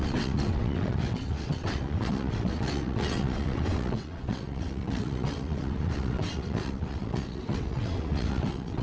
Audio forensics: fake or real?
fake